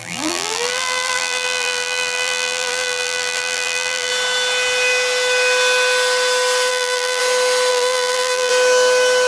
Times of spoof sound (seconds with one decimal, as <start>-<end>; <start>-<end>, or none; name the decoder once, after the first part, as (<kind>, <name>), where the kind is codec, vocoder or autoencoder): 0.0-4.1 (vocoder, BigVGAN v2); 6.7-7.2; 7.7-8.5